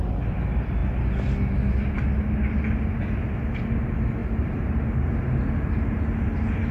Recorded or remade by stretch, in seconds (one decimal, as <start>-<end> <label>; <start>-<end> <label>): 0.0-4.2 recorded; 4.2-5.2 remade; 5.2-6.7 recorded